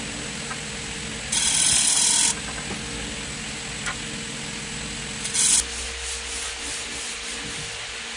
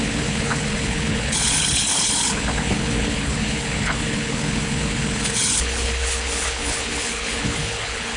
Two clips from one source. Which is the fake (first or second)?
second